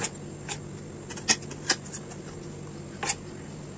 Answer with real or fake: real